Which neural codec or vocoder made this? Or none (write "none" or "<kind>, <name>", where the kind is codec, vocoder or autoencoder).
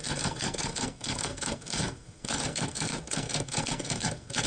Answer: codec, SNAC